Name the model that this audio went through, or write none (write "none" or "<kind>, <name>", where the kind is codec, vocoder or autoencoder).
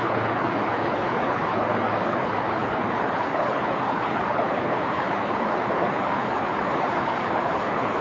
codec, HILCodec